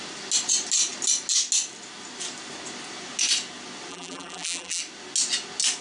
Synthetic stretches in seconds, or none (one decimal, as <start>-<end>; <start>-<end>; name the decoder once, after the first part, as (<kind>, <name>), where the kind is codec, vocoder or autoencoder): 3.9-4.8 (vocoder, BigVGAN v2)